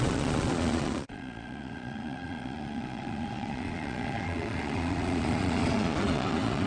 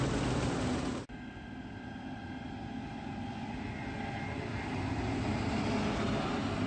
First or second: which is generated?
first